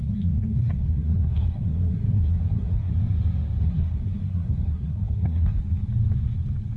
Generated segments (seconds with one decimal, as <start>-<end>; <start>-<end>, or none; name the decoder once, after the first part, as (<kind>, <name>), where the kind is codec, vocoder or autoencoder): 0.0-2.9 (codec, SNAC); 3.6-5.6